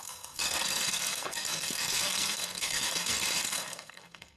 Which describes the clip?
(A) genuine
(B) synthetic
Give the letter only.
B